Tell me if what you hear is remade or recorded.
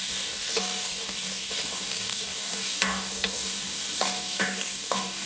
remade